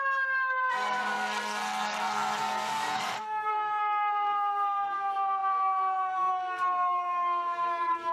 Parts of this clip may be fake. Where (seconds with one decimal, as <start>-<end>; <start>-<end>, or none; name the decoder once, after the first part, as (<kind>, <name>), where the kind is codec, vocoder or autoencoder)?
0.0-8.1 (codec, SNAC)